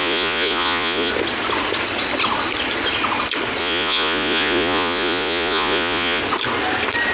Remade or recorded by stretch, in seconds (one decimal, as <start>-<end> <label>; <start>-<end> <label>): 0.0-1.1 remade; 1.1-3.6 recorded; 3.6-6.2 remade; 6.2-7.1 recorded